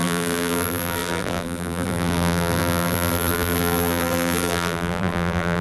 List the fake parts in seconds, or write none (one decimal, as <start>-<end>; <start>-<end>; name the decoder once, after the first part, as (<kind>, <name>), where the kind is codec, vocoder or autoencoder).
0.0-5.6 (vocoder, BigVGAN v2)